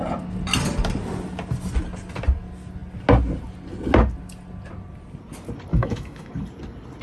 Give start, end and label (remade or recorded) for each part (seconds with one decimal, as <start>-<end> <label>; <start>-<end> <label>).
0.0-5.7 recorded; 5.7-6.3 remade; 6.3-7.0 recorded